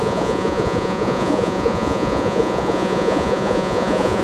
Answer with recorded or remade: remade